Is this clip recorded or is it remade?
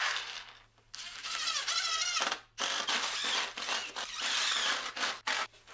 recorded